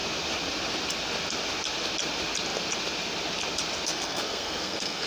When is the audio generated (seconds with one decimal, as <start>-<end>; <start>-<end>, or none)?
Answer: 3.9-5.1